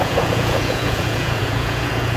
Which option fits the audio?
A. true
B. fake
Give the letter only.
B